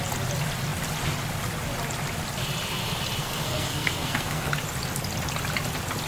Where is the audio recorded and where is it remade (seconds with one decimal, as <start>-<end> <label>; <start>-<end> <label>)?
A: 0.0-3.2 recorded; 3.2-4.5 remade; 4.5-6.1 recorded